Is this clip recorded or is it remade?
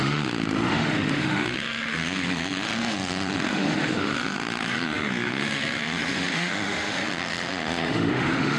remade